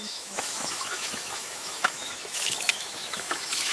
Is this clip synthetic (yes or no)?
yes